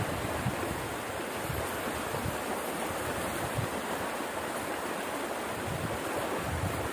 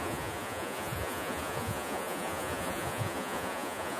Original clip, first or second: first